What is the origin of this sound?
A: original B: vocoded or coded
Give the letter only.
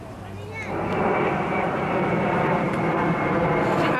A